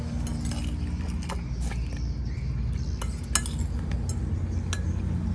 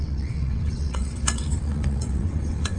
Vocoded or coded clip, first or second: second